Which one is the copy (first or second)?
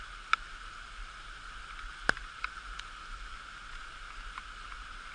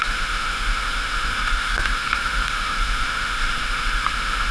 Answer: second